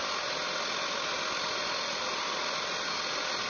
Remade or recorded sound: recorded